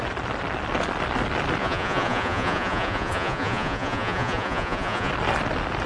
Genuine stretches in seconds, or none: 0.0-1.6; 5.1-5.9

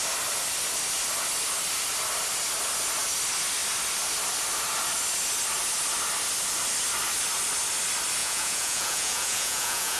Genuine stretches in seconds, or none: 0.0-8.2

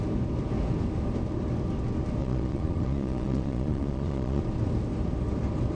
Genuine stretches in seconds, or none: 0.0-2.2; 4.4-5.8

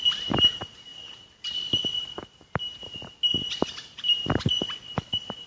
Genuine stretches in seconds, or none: 0.0-5.5